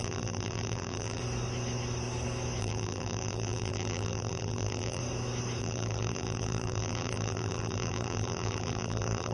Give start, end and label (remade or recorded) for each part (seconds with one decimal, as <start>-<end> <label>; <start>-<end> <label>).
0.0-1.2 remade; 1.2-2.6 recorded; 2.6-5.0 remade; 5.0-5.6 recorded; 5.6-9.3 remade